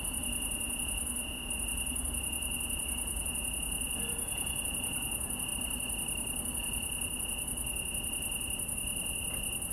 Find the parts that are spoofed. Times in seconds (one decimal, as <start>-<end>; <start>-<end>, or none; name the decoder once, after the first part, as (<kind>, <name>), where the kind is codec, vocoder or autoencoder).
0.0-5.5 (vocoder, Vocos)